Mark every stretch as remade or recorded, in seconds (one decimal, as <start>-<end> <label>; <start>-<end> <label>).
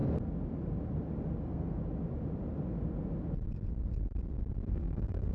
0.0-1.4 recorded; 1.4-1.8 remade; 1.8-4.7 recorded; 4.7-5.3 remade